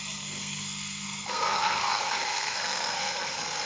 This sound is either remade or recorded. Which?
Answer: remade